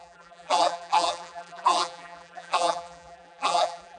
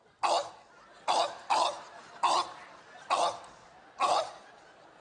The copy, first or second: first